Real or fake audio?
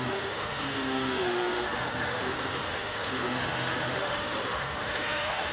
fake